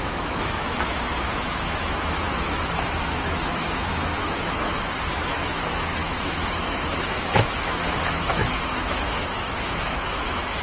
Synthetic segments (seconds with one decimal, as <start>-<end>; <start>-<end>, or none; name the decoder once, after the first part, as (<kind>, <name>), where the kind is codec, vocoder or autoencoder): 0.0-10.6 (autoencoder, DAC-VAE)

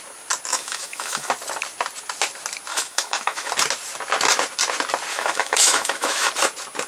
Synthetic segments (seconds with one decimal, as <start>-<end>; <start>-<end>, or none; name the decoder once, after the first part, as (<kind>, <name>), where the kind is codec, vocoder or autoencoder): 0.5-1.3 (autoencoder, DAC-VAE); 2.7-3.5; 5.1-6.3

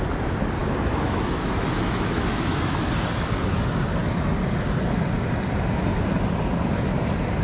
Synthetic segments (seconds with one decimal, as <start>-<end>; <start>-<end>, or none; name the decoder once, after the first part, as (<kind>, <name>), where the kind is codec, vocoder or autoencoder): 0.6-2.9 (autoencoder, DAC-VAE)